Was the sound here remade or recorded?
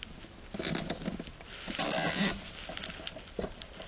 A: recorded